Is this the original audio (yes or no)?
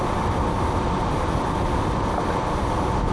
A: yes